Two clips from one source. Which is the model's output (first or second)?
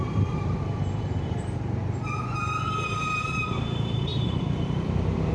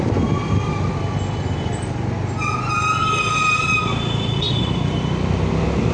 first